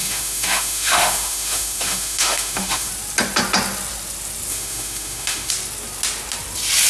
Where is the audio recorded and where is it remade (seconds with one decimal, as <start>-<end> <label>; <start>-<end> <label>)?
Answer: 0.0-2.9 remade; 2.9-4.5 recorded; 4.5-5.5 remade; 5.5-6.9 recorded